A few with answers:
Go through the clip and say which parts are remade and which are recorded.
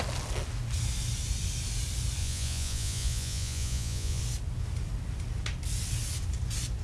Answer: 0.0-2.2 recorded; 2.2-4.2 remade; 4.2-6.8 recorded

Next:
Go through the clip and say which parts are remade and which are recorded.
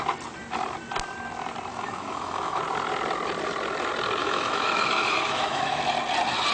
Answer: 0.0-1.7 recorded; 1.7-2.6 remade; 2.6-4.2 recorded; 4.2-5.8 remade; 5.8-6.5 recorded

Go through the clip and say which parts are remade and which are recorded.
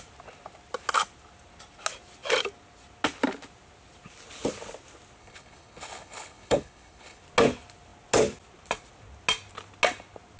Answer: 0.0-5.2 recorded; 5.2-7.2 remade; 7.2-10.4 recorded